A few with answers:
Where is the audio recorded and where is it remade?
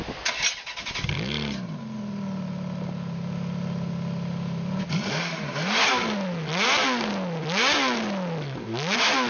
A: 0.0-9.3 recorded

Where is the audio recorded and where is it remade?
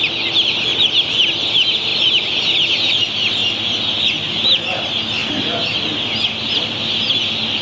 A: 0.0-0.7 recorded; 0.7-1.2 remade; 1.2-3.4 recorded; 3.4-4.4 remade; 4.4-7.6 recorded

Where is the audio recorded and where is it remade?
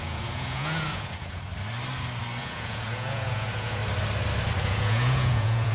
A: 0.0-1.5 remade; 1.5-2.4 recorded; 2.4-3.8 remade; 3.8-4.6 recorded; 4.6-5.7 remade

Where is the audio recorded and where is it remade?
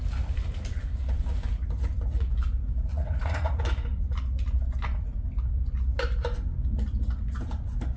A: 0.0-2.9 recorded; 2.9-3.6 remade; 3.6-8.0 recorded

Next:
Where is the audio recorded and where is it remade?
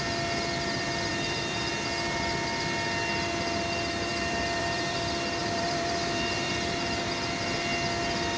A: 0.0-1.1 recorded; 1.1-1.7 remade; 1.7-4.1 recorded; 4.1-5.0 remade; 5.0-5.4 recorded; 5.4-6.5 remade; 6.5-8.4 recorded